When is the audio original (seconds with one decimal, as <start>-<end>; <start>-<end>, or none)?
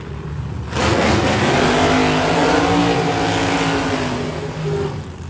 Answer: 0.0-0.8; 1.4-5.3